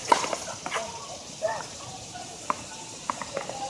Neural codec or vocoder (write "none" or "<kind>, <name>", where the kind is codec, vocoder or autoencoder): none